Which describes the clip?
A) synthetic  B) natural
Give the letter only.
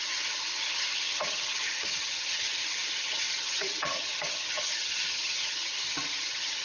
A